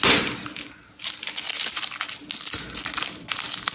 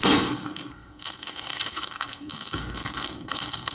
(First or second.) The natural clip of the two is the first